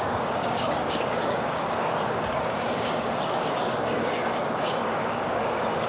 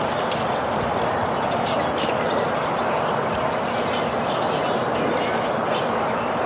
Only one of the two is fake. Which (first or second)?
first